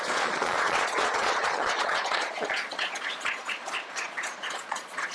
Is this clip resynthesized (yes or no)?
yes